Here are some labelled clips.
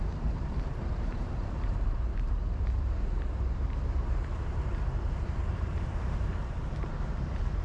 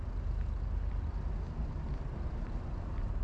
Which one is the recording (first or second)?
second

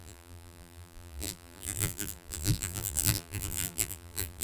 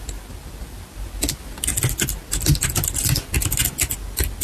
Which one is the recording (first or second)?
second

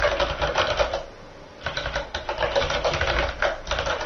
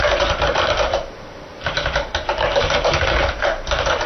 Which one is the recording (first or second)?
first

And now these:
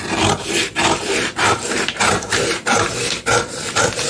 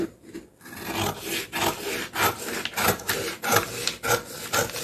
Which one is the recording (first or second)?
second